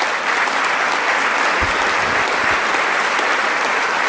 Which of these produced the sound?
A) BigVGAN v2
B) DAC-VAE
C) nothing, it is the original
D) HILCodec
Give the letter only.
A